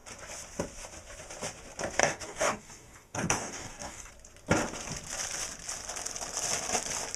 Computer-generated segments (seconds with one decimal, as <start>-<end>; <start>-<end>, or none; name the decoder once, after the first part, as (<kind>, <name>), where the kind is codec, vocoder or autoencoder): 2.0-4.1 (codec, DAC)

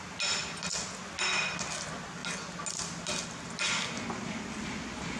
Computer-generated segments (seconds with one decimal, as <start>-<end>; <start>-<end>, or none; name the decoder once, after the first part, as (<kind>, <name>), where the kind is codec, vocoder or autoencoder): none